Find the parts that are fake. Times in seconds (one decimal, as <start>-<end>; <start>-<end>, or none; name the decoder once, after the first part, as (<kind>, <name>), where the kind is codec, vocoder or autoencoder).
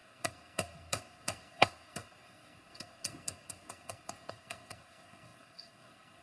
0.0-6.2 (codec, SNAC)